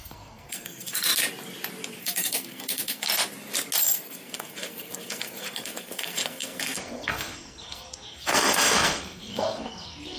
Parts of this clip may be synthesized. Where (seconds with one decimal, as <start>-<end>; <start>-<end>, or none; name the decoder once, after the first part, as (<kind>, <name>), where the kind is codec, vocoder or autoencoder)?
0.0-1.1 (codec, SNAC); 2.0-3.1; 3.8-10.2